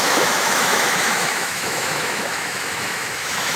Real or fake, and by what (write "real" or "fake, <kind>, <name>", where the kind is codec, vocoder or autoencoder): fake, autoencoder, DAC-VAE